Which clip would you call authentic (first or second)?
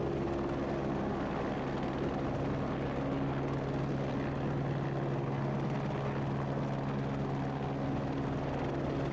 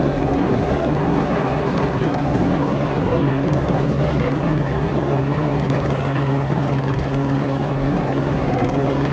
first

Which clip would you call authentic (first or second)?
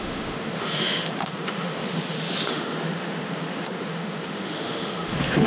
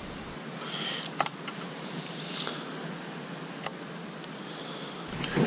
second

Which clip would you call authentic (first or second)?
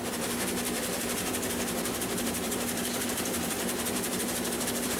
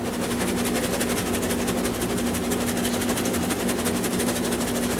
second